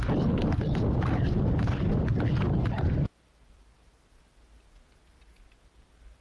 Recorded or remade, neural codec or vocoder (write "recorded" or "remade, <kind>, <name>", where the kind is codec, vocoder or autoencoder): recorded